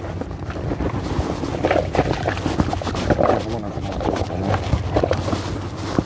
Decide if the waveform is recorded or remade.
recorded